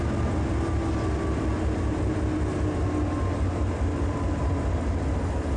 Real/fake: real